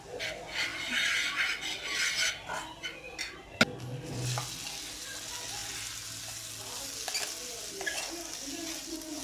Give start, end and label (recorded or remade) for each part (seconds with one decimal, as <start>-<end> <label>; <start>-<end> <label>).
0.0-9.2 recorded